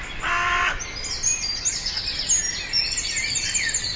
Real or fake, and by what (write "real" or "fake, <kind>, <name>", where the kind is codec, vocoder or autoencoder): real